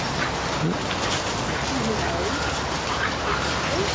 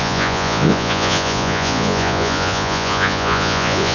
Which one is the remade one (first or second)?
second